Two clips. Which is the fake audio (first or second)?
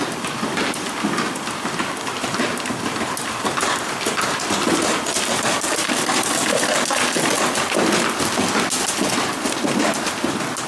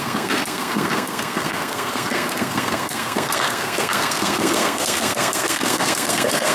second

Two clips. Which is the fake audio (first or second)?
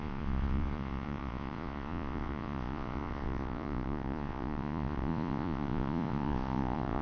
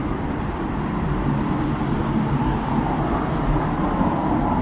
first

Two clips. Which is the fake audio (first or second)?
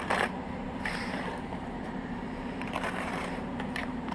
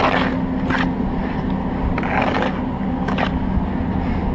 first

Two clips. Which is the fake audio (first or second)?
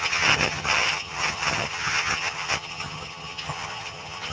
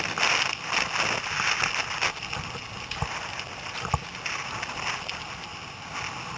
first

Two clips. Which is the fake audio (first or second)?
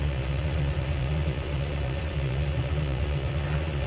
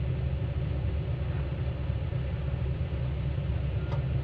first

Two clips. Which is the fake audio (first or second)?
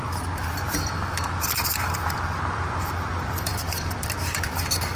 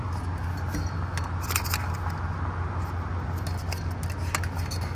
first